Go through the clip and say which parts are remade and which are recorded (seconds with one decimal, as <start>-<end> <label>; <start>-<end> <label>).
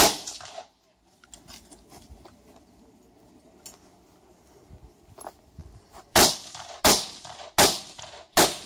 0.0-5.6 recorded; 5.6-6.3 remade; 6.3-8.7 recorded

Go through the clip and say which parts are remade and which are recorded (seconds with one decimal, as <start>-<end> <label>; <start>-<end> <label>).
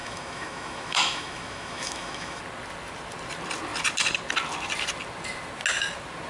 0.0-2.4 remade; 2.4-6.3 recorded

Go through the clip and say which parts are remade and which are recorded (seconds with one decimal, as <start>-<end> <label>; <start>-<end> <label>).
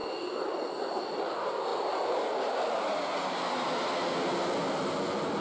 0.0-5.4 recorded